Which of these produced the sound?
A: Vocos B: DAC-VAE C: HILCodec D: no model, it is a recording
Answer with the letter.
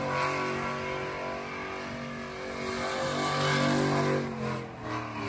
D